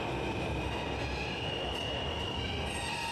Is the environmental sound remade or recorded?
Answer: recorded